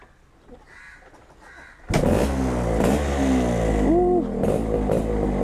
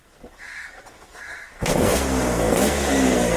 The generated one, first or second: second